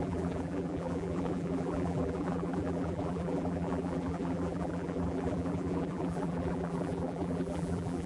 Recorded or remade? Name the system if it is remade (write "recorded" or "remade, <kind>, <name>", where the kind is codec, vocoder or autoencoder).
remade, vocoder, BigVGAN v2